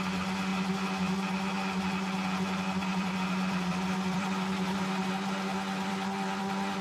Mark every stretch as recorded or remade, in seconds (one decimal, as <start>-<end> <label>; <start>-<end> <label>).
0.0-2.9 recorded; 2.9-6.8 remade